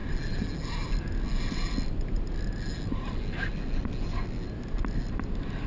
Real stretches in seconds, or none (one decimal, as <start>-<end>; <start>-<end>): 0.0-5.7